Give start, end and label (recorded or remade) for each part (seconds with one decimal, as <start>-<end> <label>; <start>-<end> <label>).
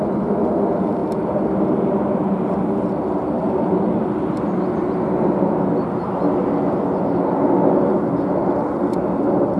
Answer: 0.0-9.6 recorded